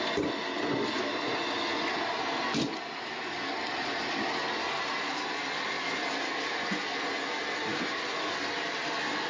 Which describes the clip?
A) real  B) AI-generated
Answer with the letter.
A